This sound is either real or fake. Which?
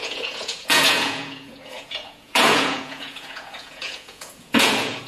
fake